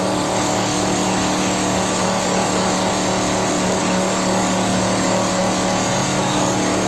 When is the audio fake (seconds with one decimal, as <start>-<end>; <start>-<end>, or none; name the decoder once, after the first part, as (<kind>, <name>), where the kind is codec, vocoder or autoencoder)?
0.0-2.9 (codec, DAC); 3.8-5.4; 6.2-6.9